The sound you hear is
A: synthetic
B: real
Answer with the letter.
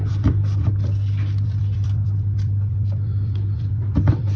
A